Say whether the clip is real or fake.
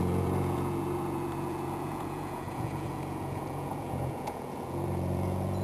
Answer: fake